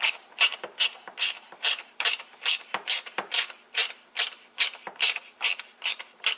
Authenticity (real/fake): fake